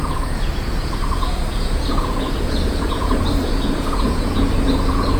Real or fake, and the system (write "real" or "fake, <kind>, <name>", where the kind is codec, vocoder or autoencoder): fake, vocoder, Vocos